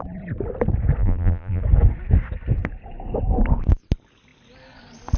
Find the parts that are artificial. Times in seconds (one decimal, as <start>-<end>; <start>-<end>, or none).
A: 1.0-1.6